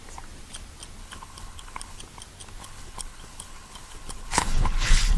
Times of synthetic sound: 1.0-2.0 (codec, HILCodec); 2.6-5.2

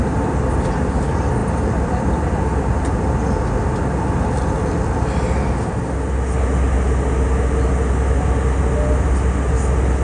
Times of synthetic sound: none

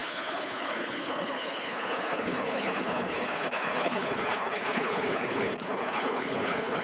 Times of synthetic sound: 0.0-6.8 (codec, HILCodec)

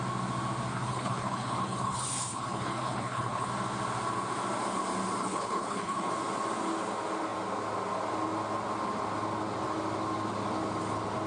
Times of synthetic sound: 0.7-3.5 (codec, HILCodec); 5.2-6.1

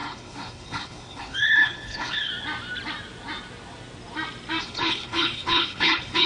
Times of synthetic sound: 0.0-2.3 (codec, HILCodec); 4.6-6.3

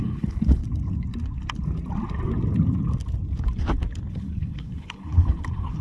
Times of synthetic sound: 0.0-0.6 (codec, HILCodec); 4.1-5.8